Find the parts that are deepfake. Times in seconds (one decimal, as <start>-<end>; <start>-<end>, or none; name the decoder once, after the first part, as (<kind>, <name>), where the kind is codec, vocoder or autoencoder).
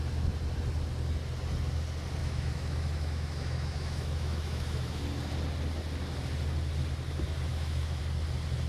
2.2-5.0 (autoencoder, DAC-VAE); 7.5-8.0